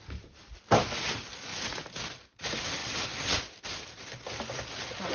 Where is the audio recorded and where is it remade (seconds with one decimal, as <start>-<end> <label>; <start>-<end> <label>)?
0.0-5.1 recorded